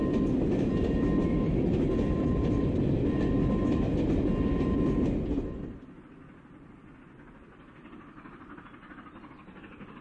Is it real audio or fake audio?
real